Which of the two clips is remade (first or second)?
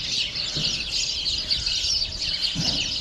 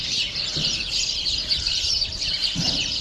second